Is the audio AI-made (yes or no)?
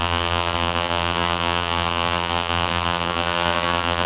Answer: yes